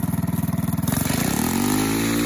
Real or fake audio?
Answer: real